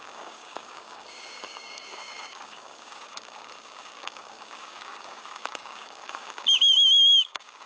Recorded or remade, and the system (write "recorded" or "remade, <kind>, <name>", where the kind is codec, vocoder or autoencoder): remade, codec, DAC